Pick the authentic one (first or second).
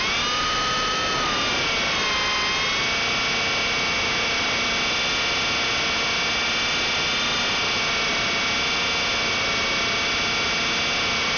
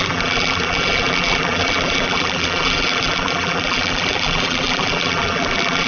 first